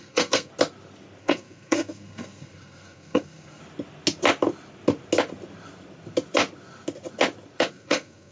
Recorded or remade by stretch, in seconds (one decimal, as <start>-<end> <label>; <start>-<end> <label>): 0.0-0.5 remade; 0.5-1.2 recorded; 1.2-3.6 remade; 3.6-7.7 recorded; 7.7-8.3 remade